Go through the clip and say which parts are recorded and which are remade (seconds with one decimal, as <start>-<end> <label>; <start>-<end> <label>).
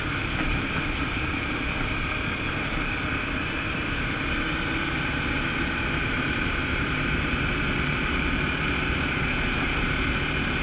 0.0-4.7 remade; 4.7-6.0 recorded; 6.0-6.6 remade; 6.6-10.6 recorded